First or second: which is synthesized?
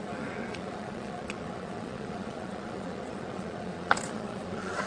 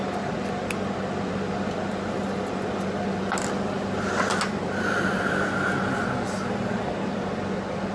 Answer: first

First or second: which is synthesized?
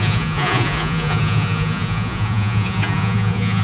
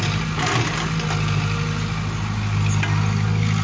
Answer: first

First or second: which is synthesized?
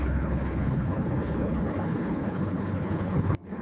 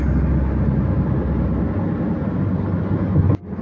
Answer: first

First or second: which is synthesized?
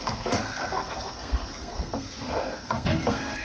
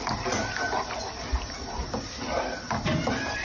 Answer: first